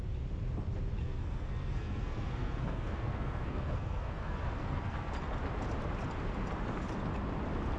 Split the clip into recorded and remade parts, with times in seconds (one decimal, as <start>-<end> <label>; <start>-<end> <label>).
0.0-1.0 recorded; 1.0-5.1 remade; 5.1-7.8 recorded